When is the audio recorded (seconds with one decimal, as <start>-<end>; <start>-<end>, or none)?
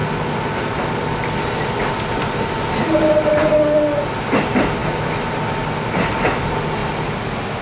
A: 0.0-7.6